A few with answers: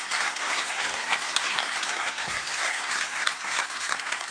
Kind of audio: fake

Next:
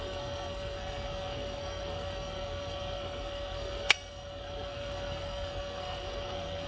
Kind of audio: fake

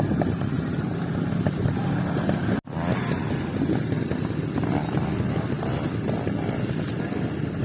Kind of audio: real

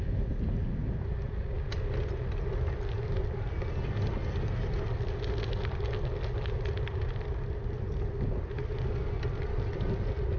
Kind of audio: real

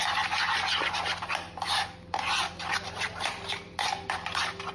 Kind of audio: real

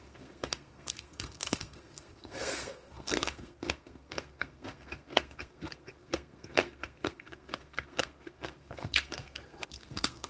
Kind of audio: fake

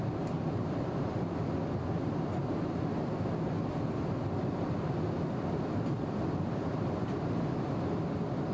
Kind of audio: real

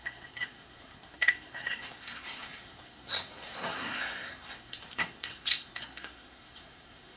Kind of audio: fake